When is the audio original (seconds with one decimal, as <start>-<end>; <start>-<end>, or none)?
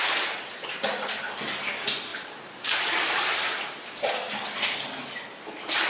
0.0-2.1; 4.1-5.9